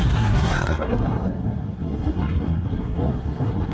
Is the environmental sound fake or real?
fake